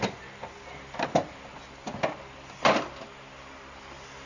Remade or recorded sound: recorded